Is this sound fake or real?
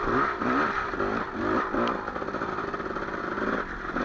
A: real